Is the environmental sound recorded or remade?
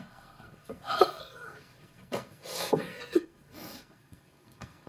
remade